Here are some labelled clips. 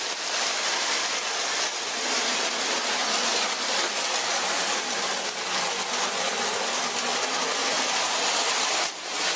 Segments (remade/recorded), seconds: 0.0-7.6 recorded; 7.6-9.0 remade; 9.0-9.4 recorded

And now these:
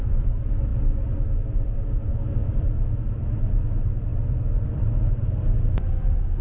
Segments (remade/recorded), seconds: 0.0-2.4 recorded; 2.4-2.9 remade; 2.9-4.1 recorded; 4.1-4.9 remade; 4.9-6.4 recorded

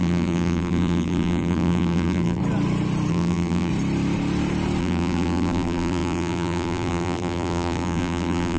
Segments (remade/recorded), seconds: 0.0-2.4 remade; 2.4-3.1 recorded; 3.1-3.7 remade; 3.7-4.8 recorded; 4.8-8.6 remade

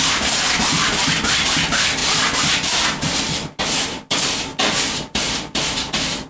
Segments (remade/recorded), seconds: 0.0-2.0 recorded; 2.0-3.6 remade; 3.6-6.3 recorded

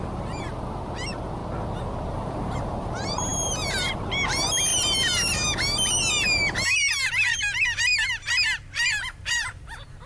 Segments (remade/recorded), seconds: 0.0-1.4 remade; 1.4-2.1 recorded; 2.1-7.9 remade; 7.9-8.9 recorded; 8.9-10.1 remade

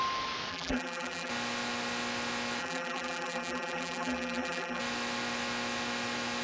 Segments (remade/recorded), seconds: 0.0-0.5 recorded; 0.5-1.3 remade; 1.3-2.6 recorded; 2.6-4.8 remade; 4.8-6.4 recorded

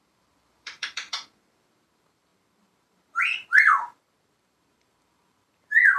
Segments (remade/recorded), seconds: 0.0-6.0 remade